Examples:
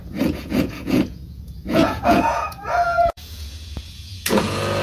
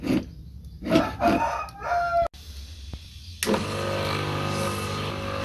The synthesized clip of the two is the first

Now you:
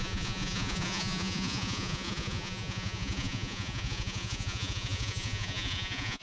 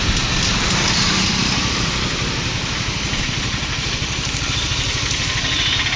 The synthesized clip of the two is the first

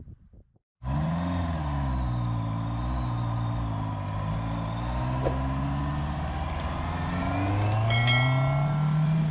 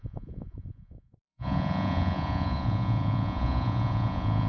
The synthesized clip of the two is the second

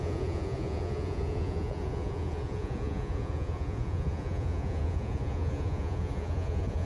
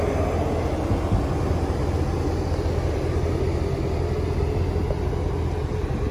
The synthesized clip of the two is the first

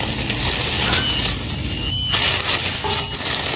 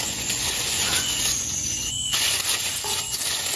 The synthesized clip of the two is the second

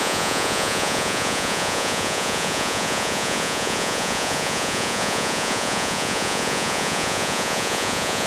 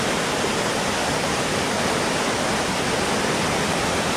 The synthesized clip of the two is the first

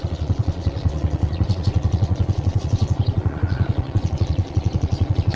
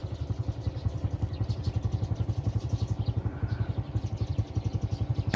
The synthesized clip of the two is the first